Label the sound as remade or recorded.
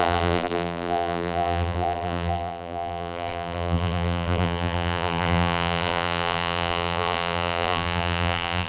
remade